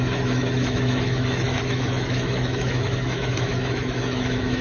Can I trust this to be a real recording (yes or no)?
no